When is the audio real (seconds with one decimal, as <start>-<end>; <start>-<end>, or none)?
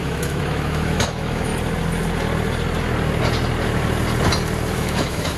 1.5-4.7